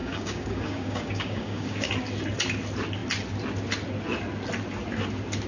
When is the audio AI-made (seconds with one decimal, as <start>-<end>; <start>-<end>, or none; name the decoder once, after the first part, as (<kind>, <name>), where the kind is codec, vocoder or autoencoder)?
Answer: 0.0-1.9 (codec, DAC)